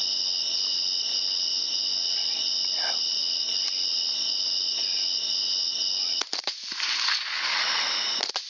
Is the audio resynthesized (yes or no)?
no